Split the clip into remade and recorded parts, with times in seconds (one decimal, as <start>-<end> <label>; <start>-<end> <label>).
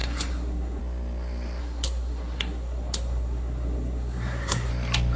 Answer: 0.0-0.8 remade; 0.8-1.6 recorded; 1.6-4.7 remade; 4.7-5.2 recorded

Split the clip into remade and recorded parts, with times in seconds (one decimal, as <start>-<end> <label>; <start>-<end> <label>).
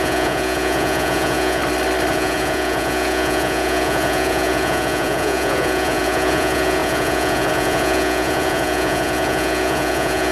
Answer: 0.0-1.6 remade; 1.6-2.1 recorded; 2.1-10.3 remade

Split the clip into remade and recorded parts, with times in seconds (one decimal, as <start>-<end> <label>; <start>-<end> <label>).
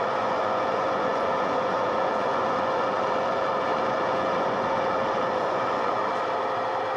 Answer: 0.0-6.0 remade; 6.0-7.0 recorded